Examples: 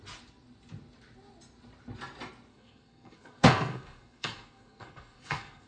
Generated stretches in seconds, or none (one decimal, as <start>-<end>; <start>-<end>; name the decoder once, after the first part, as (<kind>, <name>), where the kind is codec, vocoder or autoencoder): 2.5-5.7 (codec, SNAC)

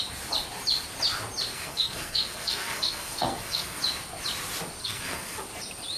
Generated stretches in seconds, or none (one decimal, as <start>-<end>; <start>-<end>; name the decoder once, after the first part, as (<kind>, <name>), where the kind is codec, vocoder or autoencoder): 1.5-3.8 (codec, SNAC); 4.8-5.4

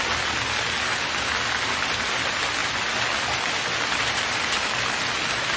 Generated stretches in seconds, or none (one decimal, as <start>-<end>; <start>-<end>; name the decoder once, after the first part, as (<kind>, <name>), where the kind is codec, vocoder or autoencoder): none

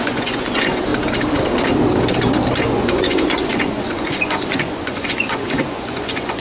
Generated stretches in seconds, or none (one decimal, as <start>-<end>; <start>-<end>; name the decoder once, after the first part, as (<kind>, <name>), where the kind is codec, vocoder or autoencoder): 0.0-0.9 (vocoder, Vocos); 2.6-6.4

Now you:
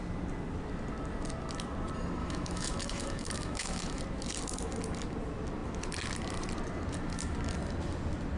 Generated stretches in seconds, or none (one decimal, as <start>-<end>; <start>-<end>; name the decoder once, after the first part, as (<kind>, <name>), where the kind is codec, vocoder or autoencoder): 2.2-4.0 (autoencoder, DAC-VAE)

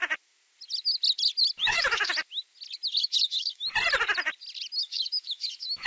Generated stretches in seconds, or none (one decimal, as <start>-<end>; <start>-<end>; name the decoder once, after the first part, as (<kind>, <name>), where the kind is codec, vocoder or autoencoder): 1.6-2.1 (autoencoder, DAC-VAE); 2.9-3.6; 4.8-5.9

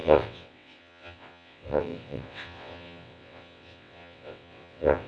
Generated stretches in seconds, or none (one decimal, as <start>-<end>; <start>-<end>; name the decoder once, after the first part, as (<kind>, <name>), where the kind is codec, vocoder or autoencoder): 0.0-5.1 (vocoder, WaveNeXt)

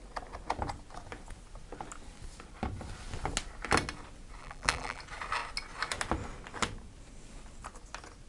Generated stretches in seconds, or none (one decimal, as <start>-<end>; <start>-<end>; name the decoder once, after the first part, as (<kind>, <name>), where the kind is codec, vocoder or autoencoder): 4.4-5.0 (vocoder, BigVGAN v2)